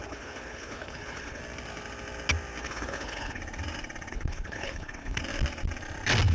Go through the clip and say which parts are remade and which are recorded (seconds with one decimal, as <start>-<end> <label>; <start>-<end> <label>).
0.0-1.4 remade; 1.4-2.6 recorded; 2.6-3.4 remade; 3.4-4.1 recorded; 4.1-5.2 remade; 5.2-6.3 recorded